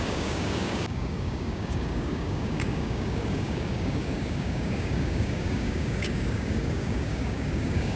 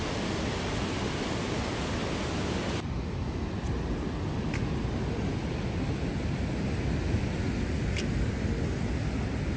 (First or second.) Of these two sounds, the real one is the second